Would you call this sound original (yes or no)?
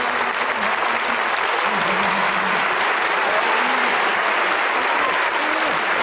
yes